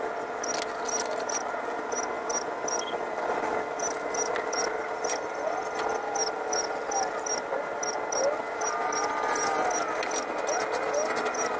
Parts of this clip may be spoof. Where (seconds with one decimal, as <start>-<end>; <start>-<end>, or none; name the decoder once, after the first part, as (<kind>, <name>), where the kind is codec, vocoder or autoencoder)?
none

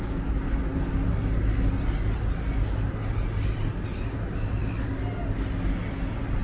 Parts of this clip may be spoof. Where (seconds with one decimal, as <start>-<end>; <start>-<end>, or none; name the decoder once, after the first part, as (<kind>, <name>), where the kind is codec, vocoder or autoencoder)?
none

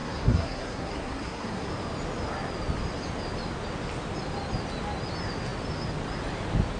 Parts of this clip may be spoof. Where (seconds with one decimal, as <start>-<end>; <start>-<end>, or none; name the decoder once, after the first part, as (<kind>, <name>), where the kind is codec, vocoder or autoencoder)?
0.0-1.7 (codec, SNAC)

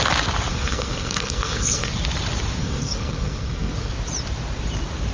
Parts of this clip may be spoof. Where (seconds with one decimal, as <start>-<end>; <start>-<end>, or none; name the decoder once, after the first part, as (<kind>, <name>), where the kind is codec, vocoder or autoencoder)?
0.5-1.9 (codec, SNAC); 2.6-3.9

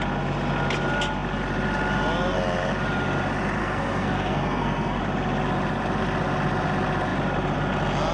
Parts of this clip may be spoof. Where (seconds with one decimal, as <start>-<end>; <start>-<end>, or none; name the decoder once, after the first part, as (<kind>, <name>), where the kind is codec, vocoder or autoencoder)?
3.6-5.0 (codec, SNAC)

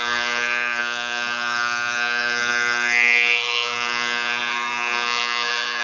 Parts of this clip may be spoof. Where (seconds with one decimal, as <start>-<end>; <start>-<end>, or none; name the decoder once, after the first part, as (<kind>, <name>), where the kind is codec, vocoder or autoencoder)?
0.0-5.8 (codec, SNAC)